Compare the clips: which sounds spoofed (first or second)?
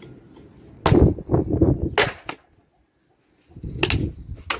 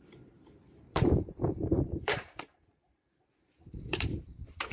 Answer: second